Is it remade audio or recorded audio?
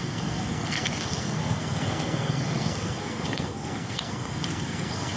remade